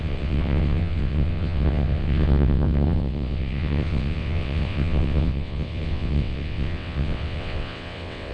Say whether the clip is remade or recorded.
remade